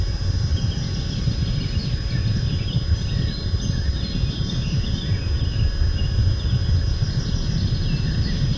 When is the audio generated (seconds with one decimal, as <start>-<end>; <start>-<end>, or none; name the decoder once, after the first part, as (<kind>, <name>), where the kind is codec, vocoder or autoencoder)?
none